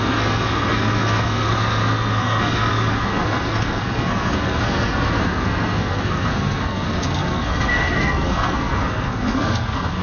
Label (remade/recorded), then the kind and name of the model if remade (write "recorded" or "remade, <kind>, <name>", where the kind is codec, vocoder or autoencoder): remade, codec, SNAC